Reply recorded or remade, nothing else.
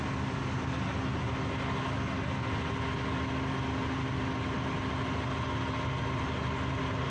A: recorded